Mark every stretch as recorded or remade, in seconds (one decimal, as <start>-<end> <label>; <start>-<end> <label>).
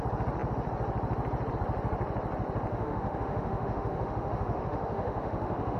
0.0-2.7 recorded; 2.7-5.8 remade